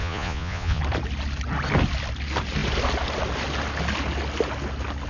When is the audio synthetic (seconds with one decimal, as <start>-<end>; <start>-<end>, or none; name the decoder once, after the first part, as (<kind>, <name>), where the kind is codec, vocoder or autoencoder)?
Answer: 0.0-0.8 (vocoder, Vocos)